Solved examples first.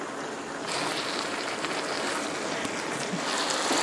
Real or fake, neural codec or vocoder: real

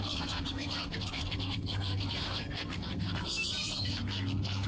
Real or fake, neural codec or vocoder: fake, codec, SNAC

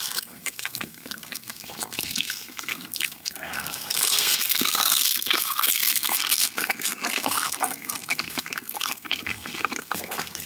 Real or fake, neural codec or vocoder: fake, codec, SNAC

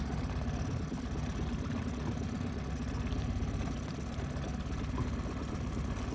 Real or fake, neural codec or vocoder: real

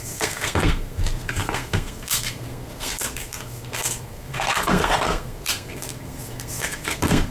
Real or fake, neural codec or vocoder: fake, codec, SNAC